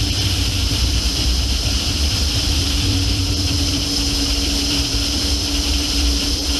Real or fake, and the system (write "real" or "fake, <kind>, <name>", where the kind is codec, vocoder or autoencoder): fake, vocoder, BigVGAN v2